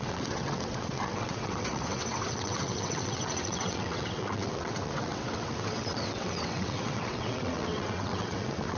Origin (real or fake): fake